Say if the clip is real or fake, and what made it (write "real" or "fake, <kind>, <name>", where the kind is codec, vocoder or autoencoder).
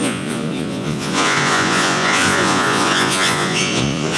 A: fake, vocoder, Vocos